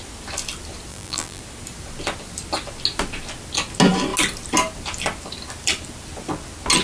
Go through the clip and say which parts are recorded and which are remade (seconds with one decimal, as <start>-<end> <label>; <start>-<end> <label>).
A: 0.0-0.9 recorded; 0.9-1.4 remade; 1.4-6.8 recorded

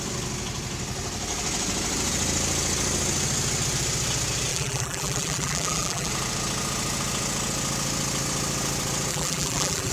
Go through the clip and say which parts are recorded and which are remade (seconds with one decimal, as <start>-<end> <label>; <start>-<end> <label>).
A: 0.0-4.5 recorded; 4.5-6.1 remade; 6.1-9.1 recorded; 9.1-9.9 remade

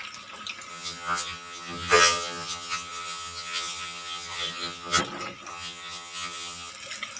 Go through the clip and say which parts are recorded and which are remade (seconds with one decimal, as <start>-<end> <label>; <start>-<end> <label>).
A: 0.0-0.7 recorded; 0.7-5.0 remade; 5.0-5.5 recorded; 5.5-6.7 remade; 6.7-7.2 recorded